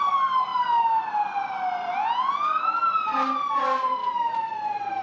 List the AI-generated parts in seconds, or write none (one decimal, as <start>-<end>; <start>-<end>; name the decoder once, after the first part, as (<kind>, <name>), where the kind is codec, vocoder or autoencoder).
none